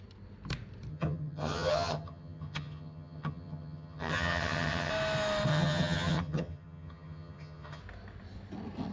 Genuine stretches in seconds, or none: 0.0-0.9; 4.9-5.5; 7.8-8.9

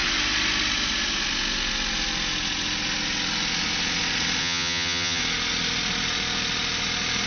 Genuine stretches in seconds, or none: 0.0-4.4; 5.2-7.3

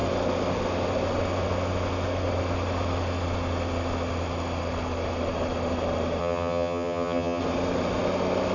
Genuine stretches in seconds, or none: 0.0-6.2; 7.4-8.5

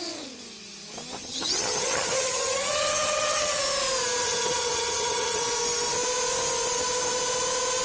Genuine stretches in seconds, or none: 0.0-1.2; 3.6-4.2; 5.4-7.8

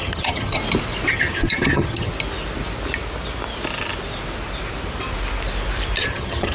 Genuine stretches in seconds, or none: 0.6-1.1; 2.1-6.0

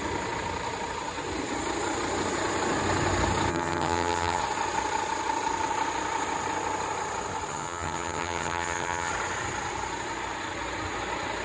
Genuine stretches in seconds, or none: 0.0-3.5; 4.4-7.5; 9.1-11.4

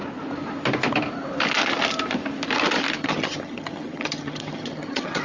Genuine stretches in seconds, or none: 0.0-3.0

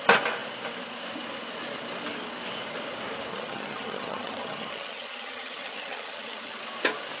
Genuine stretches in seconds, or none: 0.0-3.3; 6.6-7.2